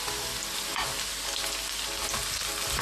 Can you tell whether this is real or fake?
real